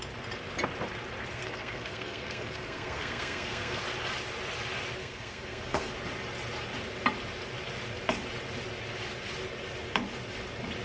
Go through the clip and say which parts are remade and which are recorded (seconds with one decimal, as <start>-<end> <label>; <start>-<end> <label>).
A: 0.0-1.3 recorded; 1.3-3.8 remade; 3.8-5.0 recorded; 5.0-5.9 remade; 5.9-10.8 recorded